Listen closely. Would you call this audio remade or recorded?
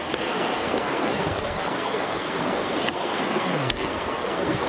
remade